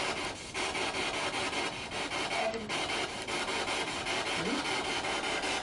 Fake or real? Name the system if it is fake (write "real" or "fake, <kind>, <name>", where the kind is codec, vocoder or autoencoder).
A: real